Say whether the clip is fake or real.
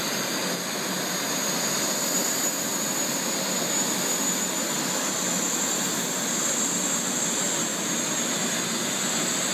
real